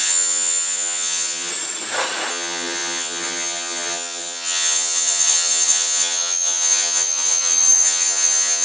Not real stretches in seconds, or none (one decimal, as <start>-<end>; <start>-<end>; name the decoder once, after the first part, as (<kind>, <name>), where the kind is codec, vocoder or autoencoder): 0.0-1.5 (vocoder, HiFi-GAN); 2.3-8.6